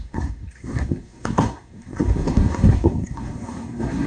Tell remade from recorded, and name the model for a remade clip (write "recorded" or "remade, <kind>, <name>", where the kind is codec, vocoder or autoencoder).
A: remade, codec, SNAC